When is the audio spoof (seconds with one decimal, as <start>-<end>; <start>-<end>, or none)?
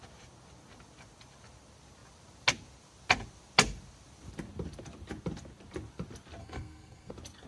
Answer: 6.4-7.1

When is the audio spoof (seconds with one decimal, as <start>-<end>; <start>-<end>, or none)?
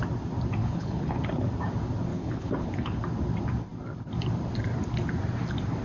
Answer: 0.6-1.2; 2.1-3.0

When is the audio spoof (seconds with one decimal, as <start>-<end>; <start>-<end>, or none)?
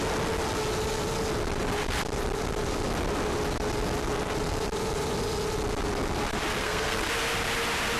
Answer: 6.6-7.1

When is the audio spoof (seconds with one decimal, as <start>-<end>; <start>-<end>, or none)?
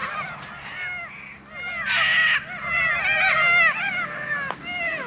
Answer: none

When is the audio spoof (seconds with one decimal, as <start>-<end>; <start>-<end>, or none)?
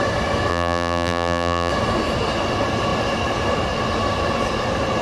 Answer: 0.5-1.7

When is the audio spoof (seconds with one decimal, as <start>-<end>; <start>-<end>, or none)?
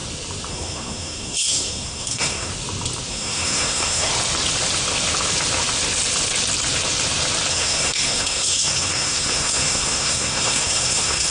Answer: 0.5-2.5; 3.1-4.1; 7.5-11.3